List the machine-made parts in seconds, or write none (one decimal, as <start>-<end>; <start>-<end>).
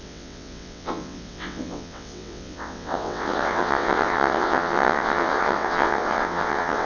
0.0-6.9